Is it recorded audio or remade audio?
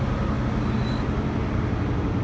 recorded